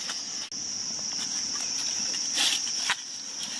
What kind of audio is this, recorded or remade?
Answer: recorded